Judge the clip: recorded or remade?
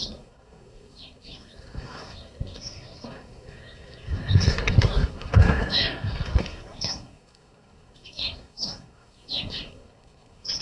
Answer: remade